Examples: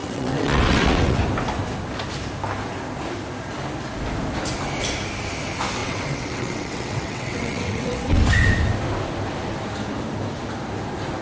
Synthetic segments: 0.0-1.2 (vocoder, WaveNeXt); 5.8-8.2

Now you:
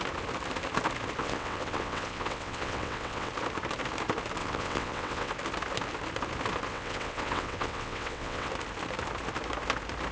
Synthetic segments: 1.2-3.3 (vocoder, WaveNeXt); 4.4-5.3; 6.7-8.5

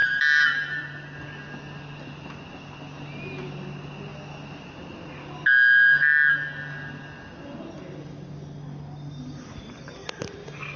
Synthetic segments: none

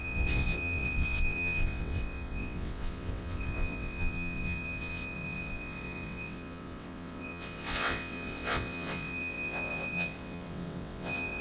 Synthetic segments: 0.0-11.4 (vocoder, WaveNeXt)